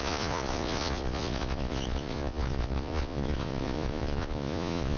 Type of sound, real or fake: fake